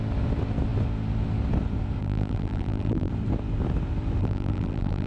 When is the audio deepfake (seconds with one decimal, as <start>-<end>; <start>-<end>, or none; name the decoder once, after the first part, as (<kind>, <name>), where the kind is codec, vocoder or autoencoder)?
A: 2.0-3.1 (vocoder, BigVGAN v2); 4.2-5.1